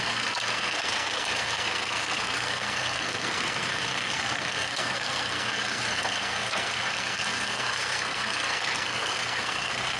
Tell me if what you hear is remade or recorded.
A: remade